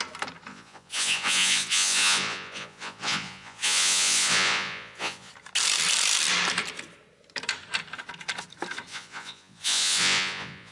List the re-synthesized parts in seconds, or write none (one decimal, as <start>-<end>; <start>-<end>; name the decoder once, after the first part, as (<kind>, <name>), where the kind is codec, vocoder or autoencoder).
0.5-5.3 (vocoder, Vocos); 8.9-10.7